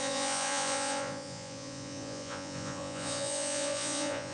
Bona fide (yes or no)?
no